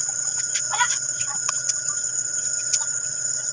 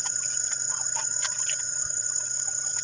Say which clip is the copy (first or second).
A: first